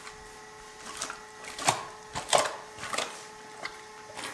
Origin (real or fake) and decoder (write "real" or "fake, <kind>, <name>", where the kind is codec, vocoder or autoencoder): real